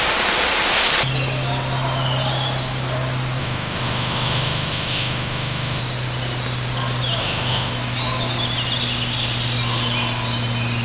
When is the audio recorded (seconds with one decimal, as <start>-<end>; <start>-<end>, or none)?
0.0-3.4; 5.8-7.2; 7.7-10.8